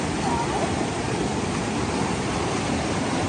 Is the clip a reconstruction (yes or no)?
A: no